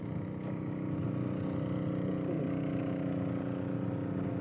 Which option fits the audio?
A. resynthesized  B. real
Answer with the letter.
B